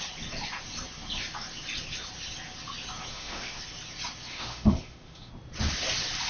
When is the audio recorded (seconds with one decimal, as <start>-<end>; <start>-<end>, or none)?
0.0-3.1; 3.6-4.3; 5.3-6.3